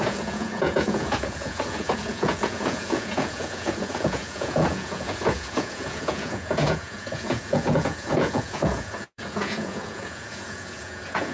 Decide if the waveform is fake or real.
fake